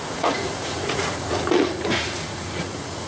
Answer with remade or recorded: remade